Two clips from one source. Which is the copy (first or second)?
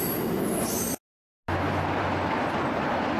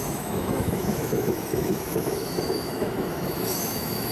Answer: second